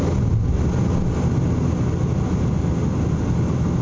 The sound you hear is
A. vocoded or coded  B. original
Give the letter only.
B